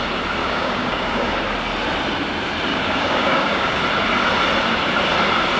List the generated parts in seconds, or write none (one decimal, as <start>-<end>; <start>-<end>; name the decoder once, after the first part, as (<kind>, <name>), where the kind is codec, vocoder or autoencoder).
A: 0.4-1.3 (codec, DAC); 2.7-3.8